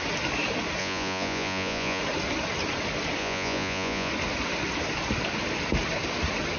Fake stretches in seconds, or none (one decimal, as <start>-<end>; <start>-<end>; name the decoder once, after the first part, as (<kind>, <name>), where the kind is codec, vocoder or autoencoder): 0.8-2.0 (vocoder, Vocos); 3.2-4.1

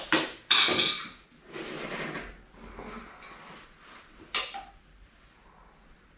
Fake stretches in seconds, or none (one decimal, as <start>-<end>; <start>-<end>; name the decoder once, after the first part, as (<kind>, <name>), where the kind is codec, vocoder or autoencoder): none

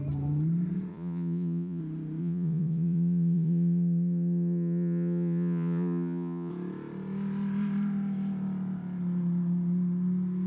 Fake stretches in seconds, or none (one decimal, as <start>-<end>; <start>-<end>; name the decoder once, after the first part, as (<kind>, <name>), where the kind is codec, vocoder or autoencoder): 0.9-1.8 (vocoder, Vocos); 2.2-6.5

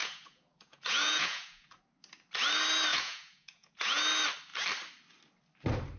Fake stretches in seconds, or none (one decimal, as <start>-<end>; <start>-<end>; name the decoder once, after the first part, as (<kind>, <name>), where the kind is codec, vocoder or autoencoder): 0.0-1.8 (vocoder, Vocos); 2.9-4.0

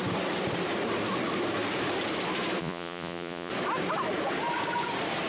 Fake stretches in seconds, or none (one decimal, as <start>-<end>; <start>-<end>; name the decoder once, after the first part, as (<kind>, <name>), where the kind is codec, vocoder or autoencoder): 2.6-3.5 (vocoder, Vocos)

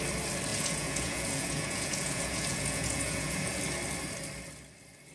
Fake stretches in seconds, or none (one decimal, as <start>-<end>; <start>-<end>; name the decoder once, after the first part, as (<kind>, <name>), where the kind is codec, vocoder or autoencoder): 0.5-3.6 (vocoder, Vocos)

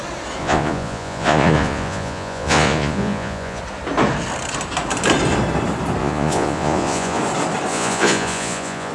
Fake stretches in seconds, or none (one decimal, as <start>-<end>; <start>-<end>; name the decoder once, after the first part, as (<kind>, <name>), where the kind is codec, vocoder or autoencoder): 0.4-3.6 (vocoder, Vocos); 6.0-7.2; 7.7-8.9